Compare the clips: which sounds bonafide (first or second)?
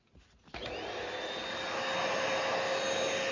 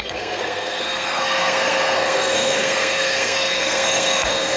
first